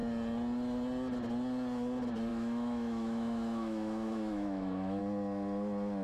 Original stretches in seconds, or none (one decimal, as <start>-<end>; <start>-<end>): 0.0-2.3; 5.0-6.0